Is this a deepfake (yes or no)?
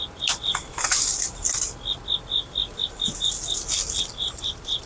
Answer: no